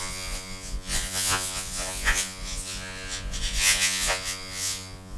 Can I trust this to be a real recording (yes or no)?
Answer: no